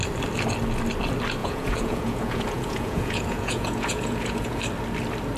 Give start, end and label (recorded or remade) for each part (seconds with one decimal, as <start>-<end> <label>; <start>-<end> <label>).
0.0-1.4 recorded; 1.4-4.6 remade; 4.6-5.4 recorded